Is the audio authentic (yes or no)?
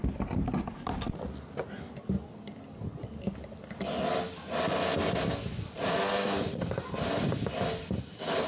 yes